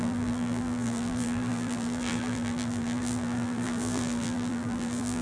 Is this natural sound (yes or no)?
no